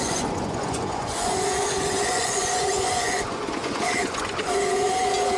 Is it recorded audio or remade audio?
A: remade